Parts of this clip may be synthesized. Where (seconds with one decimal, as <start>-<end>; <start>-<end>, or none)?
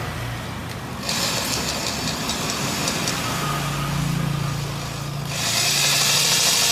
none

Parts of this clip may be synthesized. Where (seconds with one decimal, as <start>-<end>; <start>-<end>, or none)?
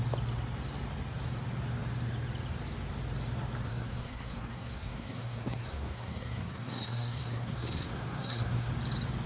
3.7-8.7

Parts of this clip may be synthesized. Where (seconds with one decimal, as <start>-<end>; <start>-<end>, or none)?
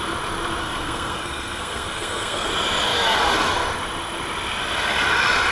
0.6-2.5